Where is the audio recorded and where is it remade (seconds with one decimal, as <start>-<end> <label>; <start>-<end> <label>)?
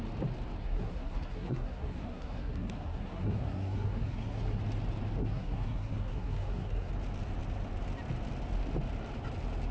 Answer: 0.0-0.6 recorded; 0.6-4.6 remade; 4.6-5.2 recorded; 5.2-6.9 remade; 6.9-9.7 recorded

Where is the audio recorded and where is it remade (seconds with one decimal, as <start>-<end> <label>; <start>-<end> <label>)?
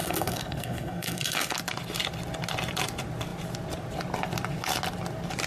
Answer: 0.0-1.5 remade; 1.5-5.5 recorded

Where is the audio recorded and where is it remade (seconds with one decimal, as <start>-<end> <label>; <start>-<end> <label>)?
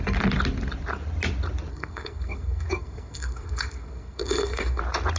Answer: 0.0-1.7 recorded; 1.7-4.8 remade; 4.8-5.2 recorded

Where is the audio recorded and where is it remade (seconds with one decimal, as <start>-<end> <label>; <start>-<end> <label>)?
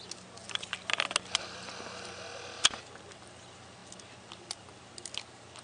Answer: 0.0-5.6 recorded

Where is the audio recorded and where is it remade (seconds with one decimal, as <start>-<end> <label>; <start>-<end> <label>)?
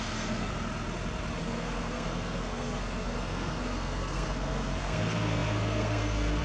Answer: 0.0-0.5 remade; 0.5-1.4 recorded; 1.4-6.4 remade